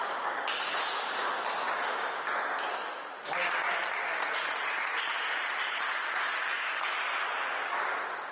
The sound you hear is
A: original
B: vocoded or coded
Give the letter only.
A